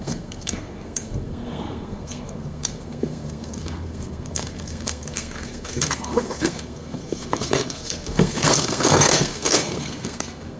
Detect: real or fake fake